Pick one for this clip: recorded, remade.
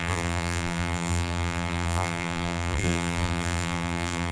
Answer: remade